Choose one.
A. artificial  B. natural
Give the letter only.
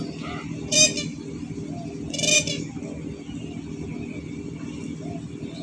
B